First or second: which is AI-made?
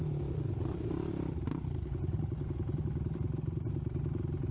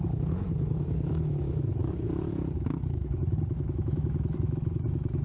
second